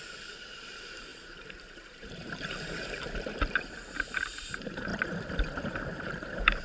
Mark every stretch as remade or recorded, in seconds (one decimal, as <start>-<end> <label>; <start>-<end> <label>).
0.0-4.9 remade; 4.9-5.6 recorded; 5.6-6.6 remade